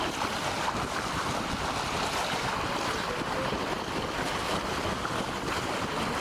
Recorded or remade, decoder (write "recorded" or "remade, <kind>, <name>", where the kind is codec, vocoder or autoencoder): recorded